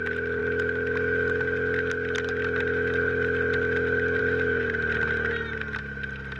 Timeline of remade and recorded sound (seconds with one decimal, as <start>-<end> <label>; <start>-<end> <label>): 0.0-6.4 recorded